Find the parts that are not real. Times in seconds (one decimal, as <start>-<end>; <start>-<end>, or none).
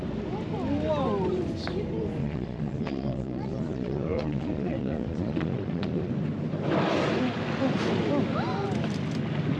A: 2.2-6.1